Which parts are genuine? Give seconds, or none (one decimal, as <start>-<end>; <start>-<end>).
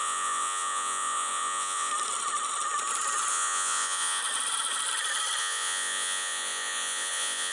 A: 1.9-3.3; 4.2-5.4